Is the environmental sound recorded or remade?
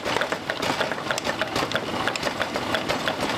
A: recorded